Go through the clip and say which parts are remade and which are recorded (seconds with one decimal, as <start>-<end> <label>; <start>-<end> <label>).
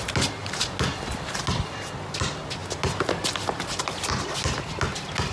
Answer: 0.0-5.3 recorded